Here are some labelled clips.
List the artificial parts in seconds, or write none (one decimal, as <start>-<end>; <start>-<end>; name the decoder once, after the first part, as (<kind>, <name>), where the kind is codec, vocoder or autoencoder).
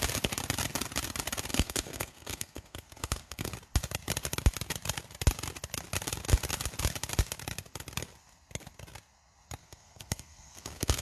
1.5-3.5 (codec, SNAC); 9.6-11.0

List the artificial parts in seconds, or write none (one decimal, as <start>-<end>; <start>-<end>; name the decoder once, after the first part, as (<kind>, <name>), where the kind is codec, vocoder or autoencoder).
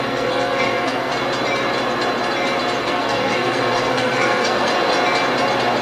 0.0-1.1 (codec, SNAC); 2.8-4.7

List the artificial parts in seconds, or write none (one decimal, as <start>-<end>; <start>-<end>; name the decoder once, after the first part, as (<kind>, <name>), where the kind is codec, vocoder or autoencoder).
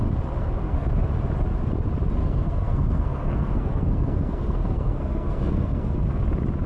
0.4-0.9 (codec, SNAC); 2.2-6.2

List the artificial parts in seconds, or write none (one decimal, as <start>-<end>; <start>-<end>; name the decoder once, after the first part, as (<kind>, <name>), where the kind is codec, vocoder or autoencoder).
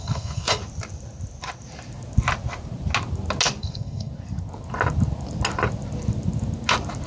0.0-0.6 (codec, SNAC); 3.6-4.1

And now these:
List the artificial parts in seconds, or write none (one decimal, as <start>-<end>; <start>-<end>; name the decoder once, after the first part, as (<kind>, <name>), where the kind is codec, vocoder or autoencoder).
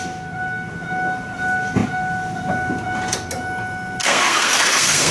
4.0-5.1 (codec, SNAC)